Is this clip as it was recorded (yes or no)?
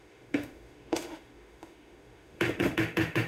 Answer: no